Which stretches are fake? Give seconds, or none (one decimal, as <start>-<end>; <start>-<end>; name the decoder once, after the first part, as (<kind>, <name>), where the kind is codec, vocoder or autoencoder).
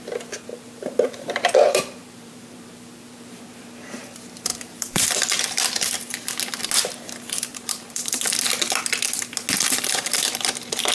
0.5-3.4 (vocoder, BigVGAN v2); 4.5-5.0; 7.5-8.1